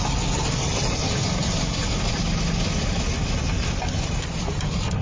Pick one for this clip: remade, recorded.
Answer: recorded